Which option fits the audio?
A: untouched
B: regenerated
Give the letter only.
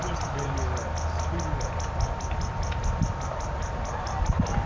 A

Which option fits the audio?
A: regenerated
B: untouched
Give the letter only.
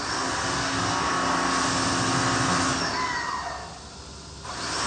B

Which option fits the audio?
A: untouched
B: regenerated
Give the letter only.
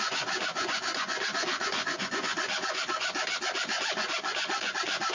B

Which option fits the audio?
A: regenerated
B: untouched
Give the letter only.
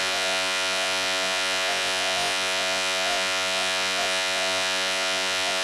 A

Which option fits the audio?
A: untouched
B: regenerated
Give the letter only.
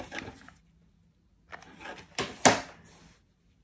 A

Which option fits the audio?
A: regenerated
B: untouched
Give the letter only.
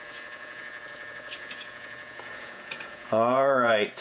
A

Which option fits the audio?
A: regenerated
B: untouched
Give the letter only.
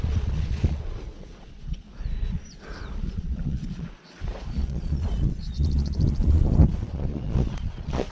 A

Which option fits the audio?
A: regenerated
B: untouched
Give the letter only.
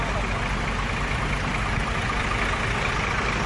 B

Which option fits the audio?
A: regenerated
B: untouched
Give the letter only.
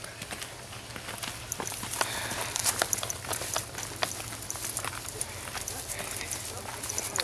B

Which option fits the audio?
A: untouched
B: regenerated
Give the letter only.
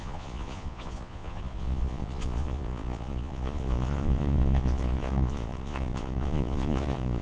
B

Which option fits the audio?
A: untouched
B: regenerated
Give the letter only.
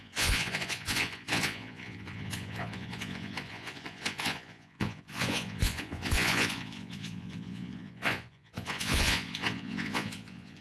B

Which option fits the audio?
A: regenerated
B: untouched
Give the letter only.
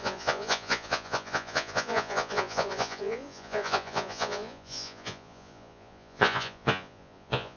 A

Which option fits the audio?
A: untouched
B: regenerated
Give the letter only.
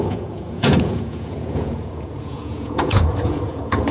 B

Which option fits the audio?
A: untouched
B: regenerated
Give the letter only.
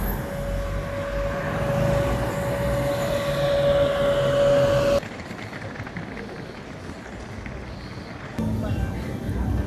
A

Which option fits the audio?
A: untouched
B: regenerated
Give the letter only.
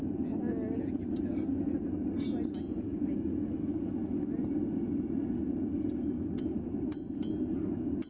A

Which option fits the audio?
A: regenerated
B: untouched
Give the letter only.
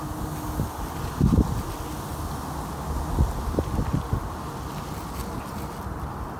B